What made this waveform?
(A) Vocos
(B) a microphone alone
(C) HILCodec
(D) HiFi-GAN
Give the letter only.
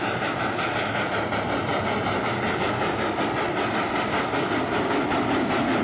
B